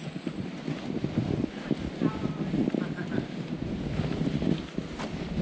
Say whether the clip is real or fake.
real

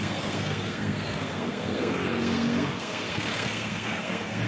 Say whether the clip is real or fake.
fake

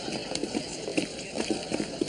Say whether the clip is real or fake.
real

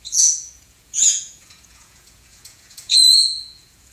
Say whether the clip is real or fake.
fake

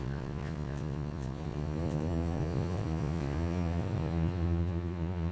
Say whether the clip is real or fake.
fake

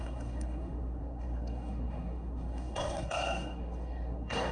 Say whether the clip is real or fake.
fake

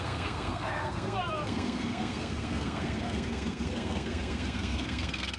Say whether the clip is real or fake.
fake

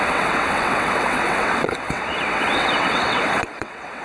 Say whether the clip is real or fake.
fake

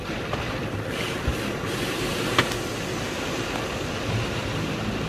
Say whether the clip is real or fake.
real